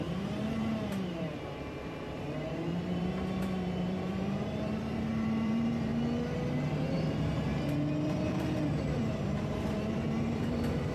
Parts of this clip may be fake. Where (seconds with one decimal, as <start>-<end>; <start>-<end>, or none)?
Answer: 0.0-5.9; 6.7-7.5; 8.3-10.9